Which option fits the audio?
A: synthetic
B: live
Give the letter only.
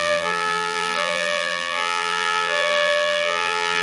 A